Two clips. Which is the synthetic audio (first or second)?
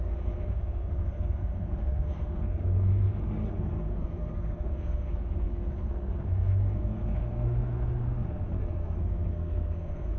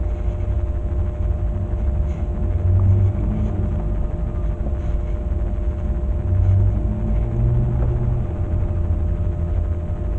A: first